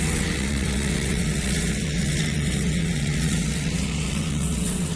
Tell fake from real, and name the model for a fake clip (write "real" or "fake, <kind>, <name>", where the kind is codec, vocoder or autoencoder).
fake, vocoder, WaveNeXt